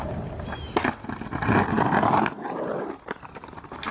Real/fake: real